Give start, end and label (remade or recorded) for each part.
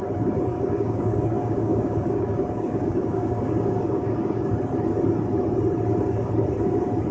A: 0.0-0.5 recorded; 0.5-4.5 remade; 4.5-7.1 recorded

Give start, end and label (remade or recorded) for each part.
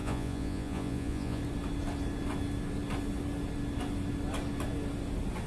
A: 0.0-1.4 remade; 1.4-5.5 recorded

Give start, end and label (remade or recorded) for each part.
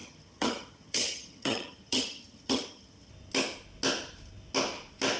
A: 0.0-3.1 remade; 3.1-5.2 recorded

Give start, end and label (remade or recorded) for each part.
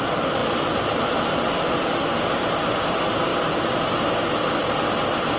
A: 0.0-5.4 recorded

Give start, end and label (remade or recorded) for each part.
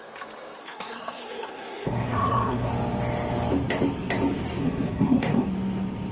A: 0.0-0.6 recorded; 0.6-2.7 remade; 2.7-4.6 recorded; 4.6-5.5 remade; 5.5-6.1 recorded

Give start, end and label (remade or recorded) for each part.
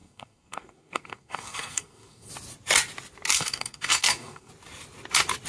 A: 0.0-2.3 remade; 2.3-3.3 recorded; 3.3-4.5 remade; 4.5-5.5 recorded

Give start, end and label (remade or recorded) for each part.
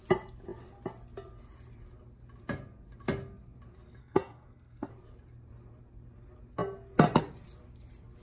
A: 0.0-4.0 recorded; 4.0-4.9 remade; 4.9-8.2 recorded